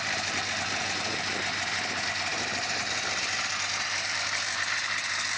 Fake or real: real